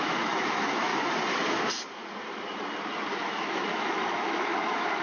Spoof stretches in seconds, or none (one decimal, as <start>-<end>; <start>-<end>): 0.0-0.9; 3.1-5.0